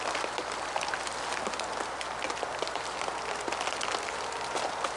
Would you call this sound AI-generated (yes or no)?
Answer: no